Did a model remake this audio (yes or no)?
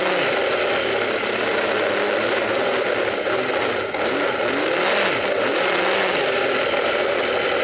no